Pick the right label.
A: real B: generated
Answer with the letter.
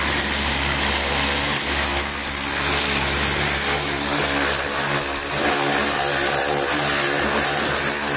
A